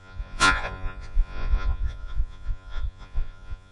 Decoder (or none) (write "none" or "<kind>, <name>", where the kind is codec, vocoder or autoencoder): vocoder, Vocos